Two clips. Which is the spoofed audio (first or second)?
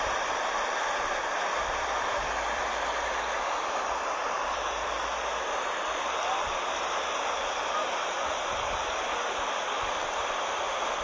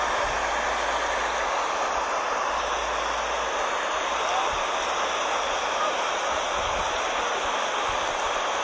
first